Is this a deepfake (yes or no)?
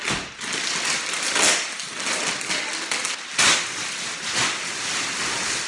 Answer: no